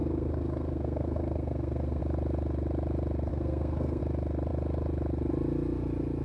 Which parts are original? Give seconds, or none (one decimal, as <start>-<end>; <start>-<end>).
2.0-3.3; 4.0-6.2